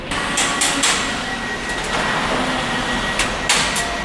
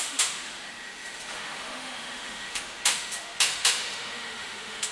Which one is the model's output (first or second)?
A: second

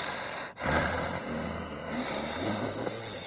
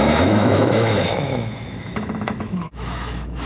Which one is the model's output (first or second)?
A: second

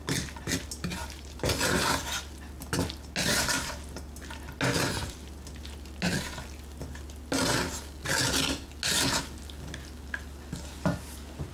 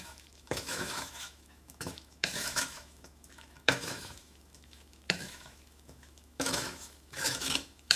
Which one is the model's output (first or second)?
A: second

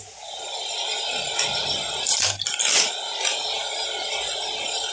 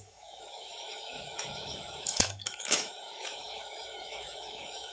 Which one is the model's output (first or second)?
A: second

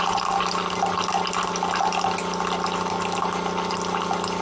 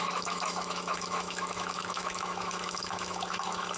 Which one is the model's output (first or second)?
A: second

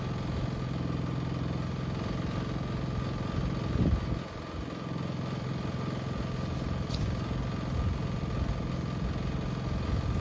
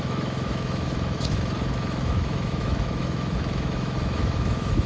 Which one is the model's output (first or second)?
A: second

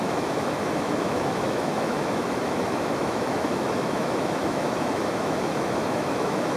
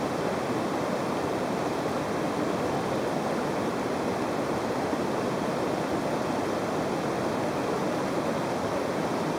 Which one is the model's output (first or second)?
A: first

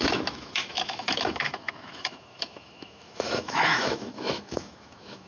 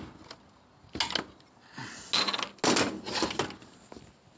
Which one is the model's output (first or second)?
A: first